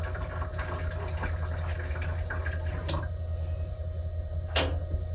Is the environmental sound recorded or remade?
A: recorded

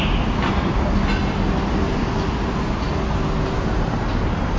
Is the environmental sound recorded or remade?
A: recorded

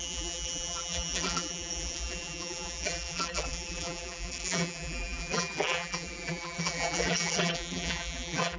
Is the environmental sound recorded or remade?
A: remade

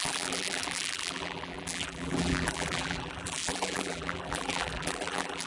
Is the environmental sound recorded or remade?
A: remade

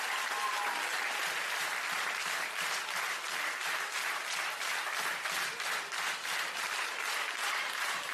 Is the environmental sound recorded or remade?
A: recorded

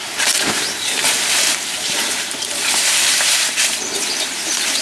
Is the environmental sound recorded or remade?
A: remade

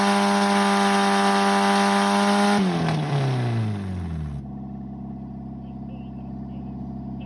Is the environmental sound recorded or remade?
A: recorded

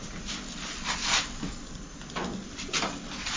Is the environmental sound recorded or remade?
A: recorded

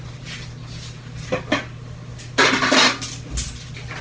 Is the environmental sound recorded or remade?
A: recorded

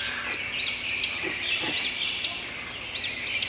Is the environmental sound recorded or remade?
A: remade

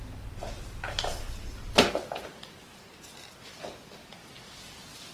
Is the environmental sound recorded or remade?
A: remade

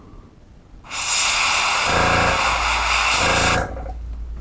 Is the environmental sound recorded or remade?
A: recorded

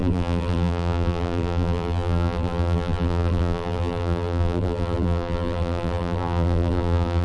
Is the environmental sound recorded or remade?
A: remade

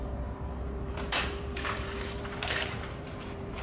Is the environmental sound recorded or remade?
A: remade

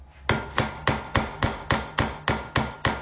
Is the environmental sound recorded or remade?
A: recorded